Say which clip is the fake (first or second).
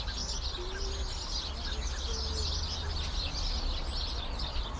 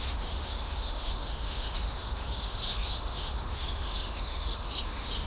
second